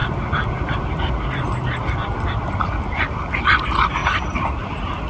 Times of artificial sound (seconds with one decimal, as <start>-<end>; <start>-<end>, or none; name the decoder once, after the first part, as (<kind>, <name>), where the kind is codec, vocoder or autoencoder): 0.0-3.1 (vocoder, BigVGAN v2); 4.0-5.1

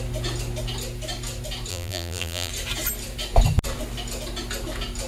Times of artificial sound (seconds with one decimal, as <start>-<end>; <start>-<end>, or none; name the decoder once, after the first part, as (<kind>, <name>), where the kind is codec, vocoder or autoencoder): 1.7-2.5 (vocoder, BigVGAN v2)

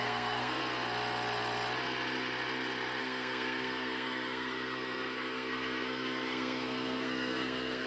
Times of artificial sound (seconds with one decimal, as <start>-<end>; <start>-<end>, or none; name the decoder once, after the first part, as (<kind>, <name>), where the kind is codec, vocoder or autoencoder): 0.0-0.6 (codec, SNAC); 3.0-7.9

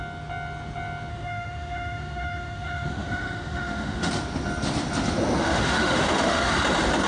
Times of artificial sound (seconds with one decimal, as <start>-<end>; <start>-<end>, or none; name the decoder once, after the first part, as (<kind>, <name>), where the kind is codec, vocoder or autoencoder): 1.1-4.1 (autoencoder, DAC-VAE); 5.4-6.5

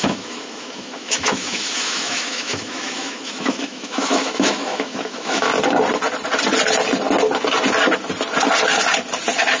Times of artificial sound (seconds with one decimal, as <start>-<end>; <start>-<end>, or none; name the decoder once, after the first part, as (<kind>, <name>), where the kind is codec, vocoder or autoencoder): 0.0-5.5 (autoencoder, DAC-VAE)

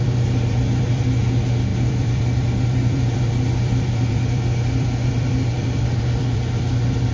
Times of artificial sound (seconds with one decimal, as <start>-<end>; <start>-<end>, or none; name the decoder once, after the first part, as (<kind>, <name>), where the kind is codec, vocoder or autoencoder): 0.0-7.1 (vocoder, BigVGAN v2)